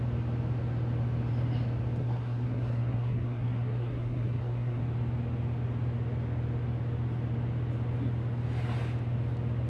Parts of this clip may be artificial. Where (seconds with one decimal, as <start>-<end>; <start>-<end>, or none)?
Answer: 2.0-4.8